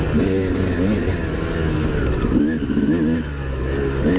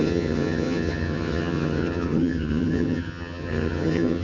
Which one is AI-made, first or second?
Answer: second